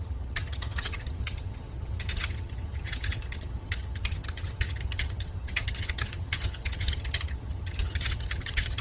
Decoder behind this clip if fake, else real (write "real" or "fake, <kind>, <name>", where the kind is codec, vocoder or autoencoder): fake, vocoder, HiFi-GAN